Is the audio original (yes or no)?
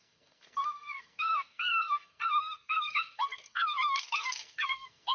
no